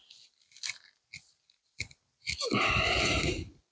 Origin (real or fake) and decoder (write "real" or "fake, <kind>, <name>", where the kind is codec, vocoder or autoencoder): real